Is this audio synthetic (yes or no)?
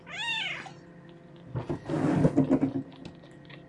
no